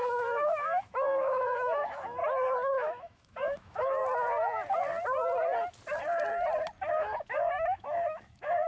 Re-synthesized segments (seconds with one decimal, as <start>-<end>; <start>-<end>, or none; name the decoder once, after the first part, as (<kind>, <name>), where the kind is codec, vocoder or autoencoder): 0.0-2.2 (autoencoder, DAC-VAE); 2.7-4.0; 6.9-8.7